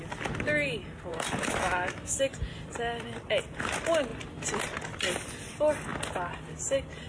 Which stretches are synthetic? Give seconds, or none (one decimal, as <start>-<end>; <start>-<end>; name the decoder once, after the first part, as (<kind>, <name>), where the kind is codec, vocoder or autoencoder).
1.1-2.2 (autoencoder, DAC-VAE)

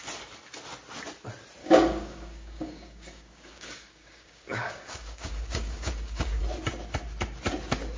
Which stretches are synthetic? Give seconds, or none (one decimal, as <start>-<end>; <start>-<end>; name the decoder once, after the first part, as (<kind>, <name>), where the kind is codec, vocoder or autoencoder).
1.6-6.4 (codec, DAC)

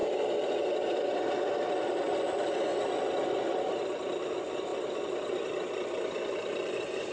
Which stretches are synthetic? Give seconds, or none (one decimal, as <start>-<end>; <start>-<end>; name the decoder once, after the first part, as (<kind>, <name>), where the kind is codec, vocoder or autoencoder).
none

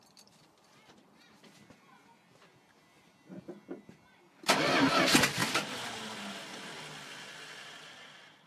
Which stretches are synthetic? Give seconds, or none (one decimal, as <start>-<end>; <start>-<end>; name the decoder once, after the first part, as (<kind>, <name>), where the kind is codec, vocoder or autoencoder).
none